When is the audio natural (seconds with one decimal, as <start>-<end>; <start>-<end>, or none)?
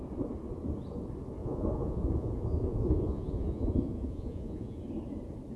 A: 0.0-1.4; 4.8-5.6